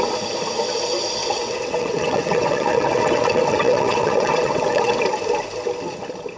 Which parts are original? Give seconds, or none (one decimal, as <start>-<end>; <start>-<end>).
0.0-1.2; 5.0-6.4